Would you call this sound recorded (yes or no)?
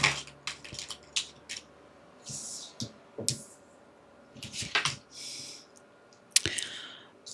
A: yes